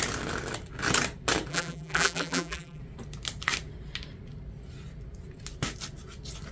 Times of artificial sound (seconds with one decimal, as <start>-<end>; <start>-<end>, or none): 1.5-2.8